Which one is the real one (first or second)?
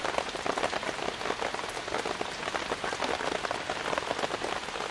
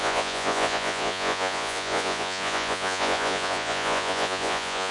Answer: first